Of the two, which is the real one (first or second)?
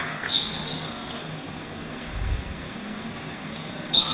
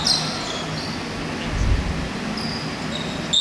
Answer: second